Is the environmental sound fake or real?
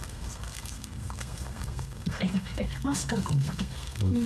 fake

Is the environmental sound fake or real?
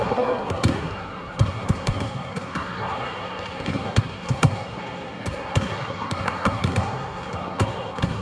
fake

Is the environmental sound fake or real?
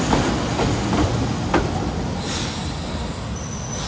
real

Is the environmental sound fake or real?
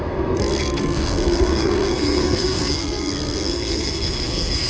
fake